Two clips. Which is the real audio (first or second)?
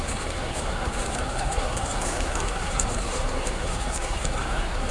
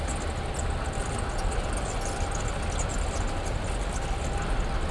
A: second